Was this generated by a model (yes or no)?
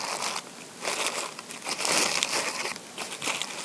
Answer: no